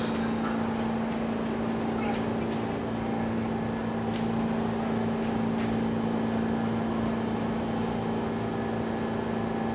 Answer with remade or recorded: recorded